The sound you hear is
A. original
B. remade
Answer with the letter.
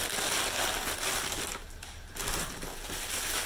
A